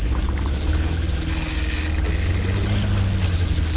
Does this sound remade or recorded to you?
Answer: recorded